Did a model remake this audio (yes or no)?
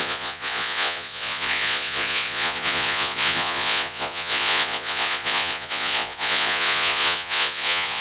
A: yes